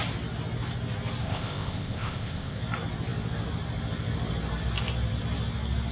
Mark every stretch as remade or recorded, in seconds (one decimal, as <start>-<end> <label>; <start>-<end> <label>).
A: 0.0-1.2 recorded; 1.2-2.6 remade; 2.6-5.9 recorded